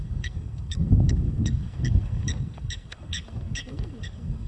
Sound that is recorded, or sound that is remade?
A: remade